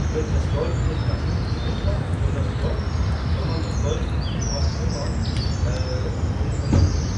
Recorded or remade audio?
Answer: recorded